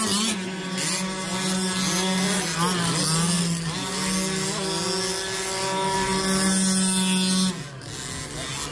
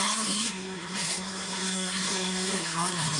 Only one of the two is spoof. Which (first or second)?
second